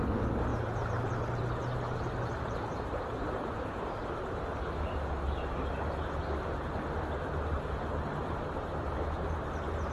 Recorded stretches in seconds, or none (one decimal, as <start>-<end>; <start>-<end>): 0.0-0.5; 5.7-7.5; 9.5-9.9